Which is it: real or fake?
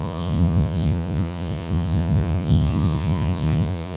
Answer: fake